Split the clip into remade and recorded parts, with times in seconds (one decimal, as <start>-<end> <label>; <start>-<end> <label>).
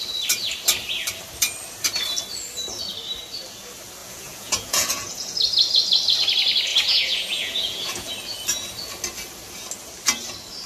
0.0-4.0 recorded; 4.0-5.3 remade; 5.3-6.7 recorded; 6.7-8.1 remade; 8.1-10.7 recorded